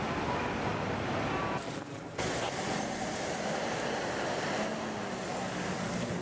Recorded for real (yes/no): yes